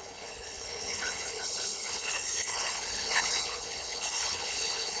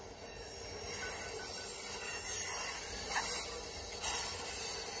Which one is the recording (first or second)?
second